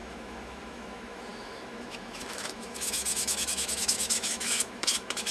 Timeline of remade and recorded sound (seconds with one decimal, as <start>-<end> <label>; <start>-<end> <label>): 0.0-5.3 remade